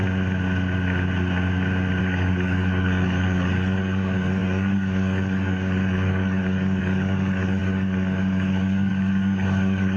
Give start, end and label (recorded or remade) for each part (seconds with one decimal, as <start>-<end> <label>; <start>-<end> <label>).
0.0-2.0 recorded; 2.0-10.0 remade